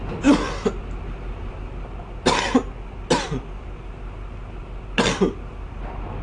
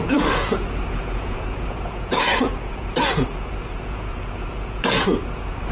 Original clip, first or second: first